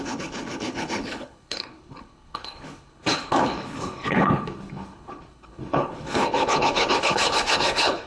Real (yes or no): no